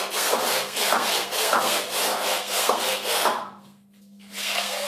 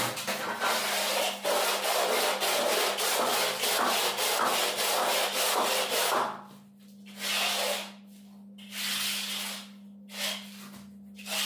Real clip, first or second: second